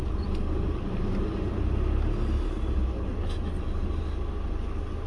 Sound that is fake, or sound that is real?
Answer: real